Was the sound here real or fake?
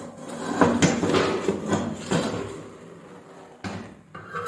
real